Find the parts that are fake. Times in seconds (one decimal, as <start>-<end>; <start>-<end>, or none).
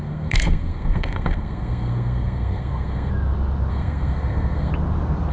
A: 0.0-3.1; 3.7-4.7